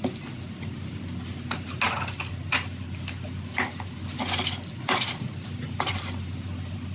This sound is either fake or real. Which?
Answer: real